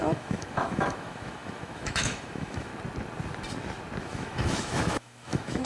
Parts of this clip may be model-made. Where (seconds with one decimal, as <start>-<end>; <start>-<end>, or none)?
0.0-2.7; 4.0-5.7